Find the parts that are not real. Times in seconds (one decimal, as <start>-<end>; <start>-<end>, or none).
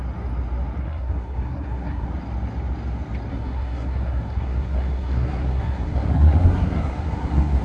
0.8-2.1; 3.3-7.6